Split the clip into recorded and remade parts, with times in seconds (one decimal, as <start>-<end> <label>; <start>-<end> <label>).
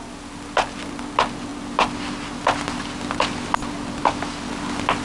0.0-5.0 recorded